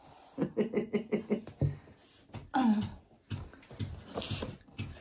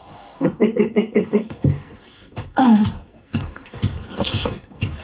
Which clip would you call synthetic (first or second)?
second